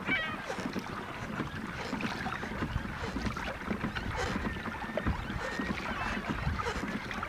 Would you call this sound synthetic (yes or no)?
no